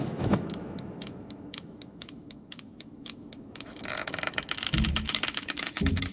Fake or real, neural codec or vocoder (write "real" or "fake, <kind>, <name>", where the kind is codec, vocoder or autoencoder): fake, autoencoder, DAC-VAE